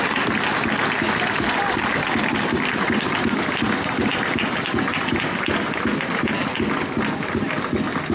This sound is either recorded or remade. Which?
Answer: recorded